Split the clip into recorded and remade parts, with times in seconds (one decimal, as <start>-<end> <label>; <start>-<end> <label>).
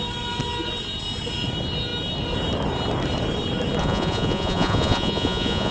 0.0-3.8 recorded; 3.8-5.7 remade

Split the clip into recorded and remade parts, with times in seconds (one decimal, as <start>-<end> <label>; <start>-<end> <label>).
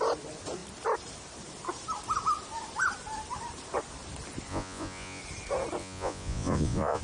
0.0-4.5 recorded; 4.5-5.2 remade; 5.2-5.8 recorded; 5.8-7.0 remade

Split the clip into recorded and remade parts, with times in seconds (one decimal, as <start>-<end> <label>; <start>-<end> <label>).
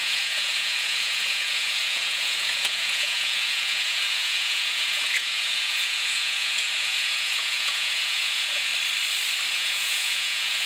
0.0-8.7 remade; 8.7-9.5 recorded; 9.5-10.7 remade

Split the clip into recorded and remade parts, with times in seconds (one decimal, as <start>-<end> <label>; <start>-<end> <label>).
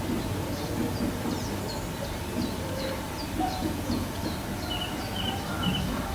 0.0-3.6 recorded; 3.6-4.2 remade; 4.2-6.1 recorded